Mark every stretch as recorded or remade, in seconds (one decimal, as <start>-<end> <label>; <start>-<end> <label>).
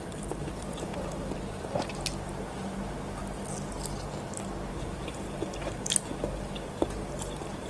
0.0-0.9 remade; 0.9-1.5 recorded; 1.5-3.2 remade; 3.2-4.7 recorded; 4.7-7.7 remade